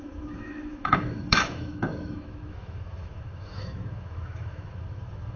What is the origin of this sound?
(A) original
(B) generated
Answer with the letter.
B